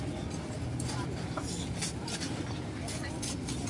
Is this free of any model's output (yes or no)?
yes